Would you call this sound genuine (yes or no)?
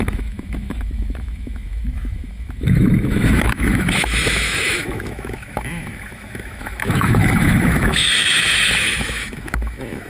no